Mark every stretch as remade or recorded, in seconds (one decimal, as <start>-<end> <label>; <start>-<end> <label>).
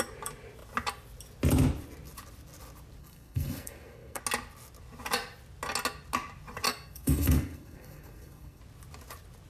0.0-3.0 recorded; 3.0-4.2 remade; 4.2-6.7 recorded; 6.7-8.6 remade; 8.6-9.5 recorded